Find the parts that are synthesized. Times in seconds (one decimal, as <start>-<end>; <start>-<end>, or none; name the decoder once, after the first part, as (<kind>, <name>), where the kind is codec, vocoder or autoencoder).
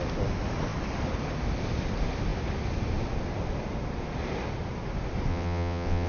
5.3-6.1 (vocoder, WaveNeXt)